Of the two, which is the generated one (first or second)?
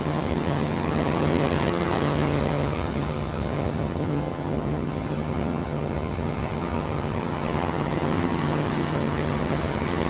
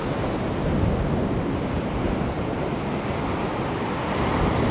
first